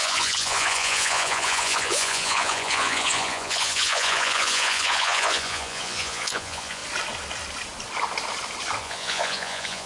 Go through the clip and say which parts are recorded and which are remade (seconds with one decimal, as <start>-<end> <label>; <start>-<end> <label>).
0.0-6.8 remade; 6.8-8.8 recorded; 8.8-9.9 remade